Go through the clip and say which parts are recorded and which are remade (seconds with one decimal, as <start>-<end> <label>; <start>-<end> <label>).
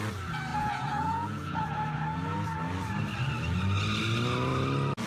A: 0.0-0.5 recorded; 0.5-1.7 remade; 1.7-5.1 recorded